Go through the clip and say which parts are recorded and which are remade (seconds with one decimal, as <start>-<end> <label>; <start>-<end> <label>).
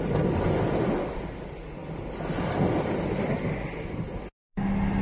0.0-5.0 recorded